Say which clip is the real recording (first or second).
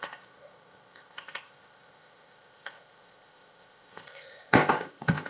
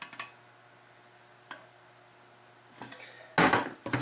second